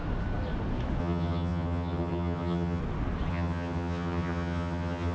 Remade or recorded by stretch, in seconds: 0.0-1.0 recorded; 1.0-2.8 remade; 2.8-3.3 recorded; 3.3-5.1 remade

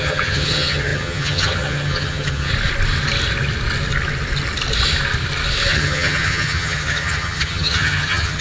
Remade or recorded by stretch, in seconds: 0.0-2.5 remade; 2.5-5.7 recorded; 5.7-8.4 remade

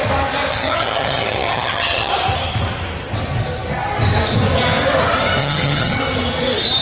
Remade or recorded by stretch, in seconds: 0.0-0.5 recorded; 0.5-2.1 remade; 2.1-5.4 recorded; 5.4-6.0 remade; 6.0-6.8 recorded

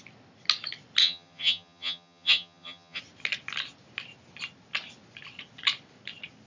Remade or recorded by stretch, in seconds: 0.0-1.0 recorded; 1.0-3.0 remade; 3.0-6.5 recorded

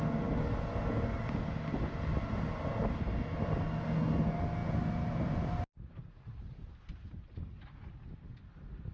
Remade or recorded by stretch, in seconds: 0.0-8.9 recorded